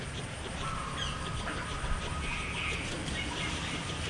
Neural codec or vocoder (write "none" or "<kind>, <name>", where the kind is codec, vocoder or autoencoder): none